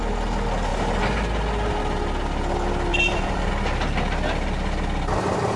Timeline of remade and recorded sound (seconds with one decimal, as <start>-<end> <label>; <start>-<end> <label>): 0.0-2.9 recorded; 2.9-3.5 remade; 3.5-5.6 recorded